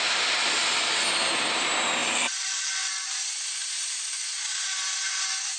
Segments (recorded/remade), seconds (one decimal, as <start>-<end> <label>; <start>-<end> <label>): 0.0-5.6 recorded